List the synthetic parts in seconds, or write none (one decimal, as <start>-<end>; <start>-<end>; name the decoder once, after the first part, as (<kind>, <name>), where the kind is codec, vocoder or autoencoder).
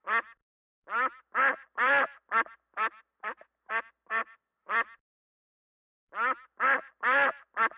0.4-3.8 (vocoder, BigVGAN v2); 4.2-7.8